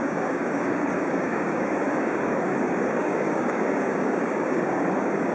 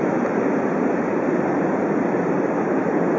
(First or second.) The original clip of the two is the second